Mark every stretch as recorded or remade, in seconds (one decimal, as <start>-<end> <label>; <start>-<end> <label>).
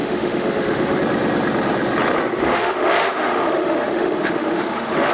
0.0-1.0 remade; 1.0-2.4 recorded; 2.4-5.1 remade